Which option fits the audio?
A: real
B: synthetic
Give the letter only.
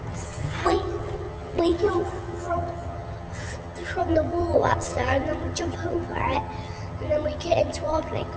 B